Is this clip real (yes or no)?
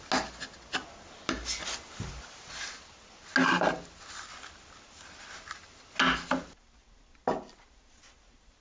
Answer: yes